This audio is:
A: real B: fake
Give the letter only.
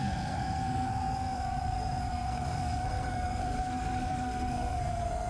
B